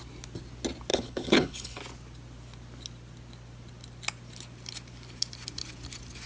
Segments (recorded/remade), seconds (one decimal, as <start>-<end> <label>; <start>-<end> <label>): 0.0-0.9 recorded; 0.9-1.8 remade; 1.8-6.3 recorded